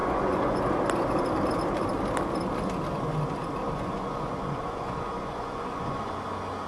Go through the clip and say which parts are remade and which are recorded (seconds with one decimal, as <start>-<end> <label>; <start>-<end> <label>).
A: 0.0-0.6 remade; 0.6-3.6 recorded; 3.6-6.1 remade; 6.1-6.7 recorded